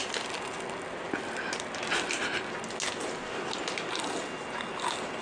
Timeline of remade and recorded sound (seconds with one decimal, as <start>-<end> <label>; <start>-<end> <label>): 0.0-5.2 recorded